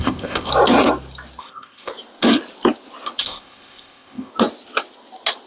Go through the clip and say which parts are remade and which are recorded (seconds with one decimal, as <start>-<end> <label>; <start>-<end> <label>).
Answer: 0.0-0.5 remade; 0.5-1.4 recorded; 1.4-1.9 remade; 1.9-3.2 recorded; 3.2-4.3 remade; 4.3-5.5 recorded